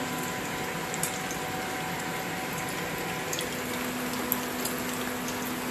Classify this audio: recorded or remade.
recorded